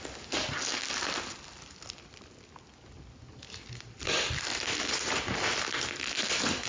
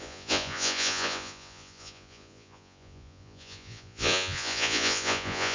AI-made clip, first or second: second